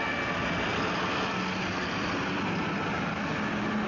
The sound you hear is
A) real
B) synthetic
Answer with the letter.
A